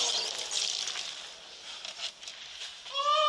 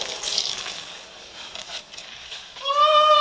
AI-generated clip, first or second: second